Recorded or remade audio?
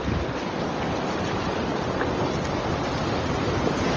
recorded